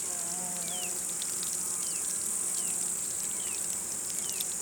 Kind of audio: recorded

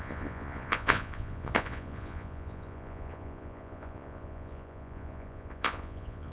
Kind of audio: remade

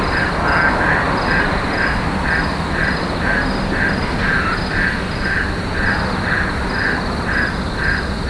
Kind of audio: recorded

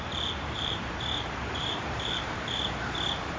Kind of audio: remade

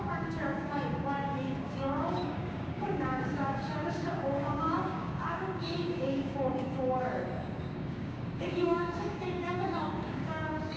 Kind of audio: remade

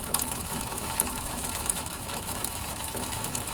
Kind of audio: remade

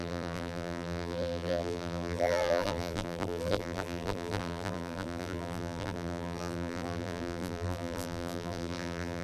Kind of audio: remade